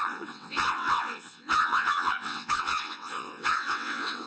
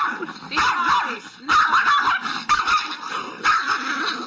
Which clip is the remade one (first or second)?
first